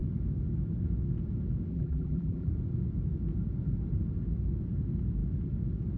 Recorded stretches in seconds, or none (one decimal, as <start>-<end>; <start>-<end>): 0.0-1.7; 2.5-6.0